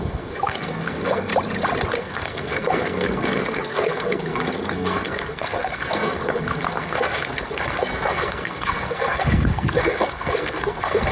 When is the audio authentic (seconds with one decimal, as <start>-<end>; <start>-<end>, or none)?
1.3-2.0